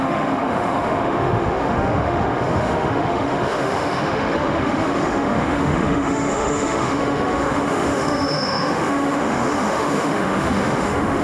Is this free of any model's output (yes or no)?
no